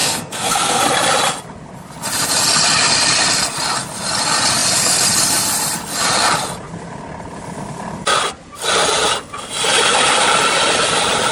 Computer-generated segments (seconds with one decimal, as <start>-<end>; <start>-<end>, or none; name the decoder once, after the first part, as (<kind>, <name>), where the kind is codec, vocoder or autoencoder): 0.0-0.8 (codec, SNAC)